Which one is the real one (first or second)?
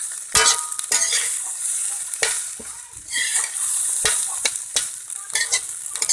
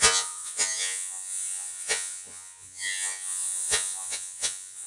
first